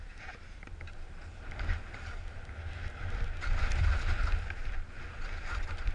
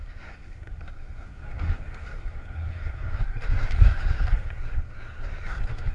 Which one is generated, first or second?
second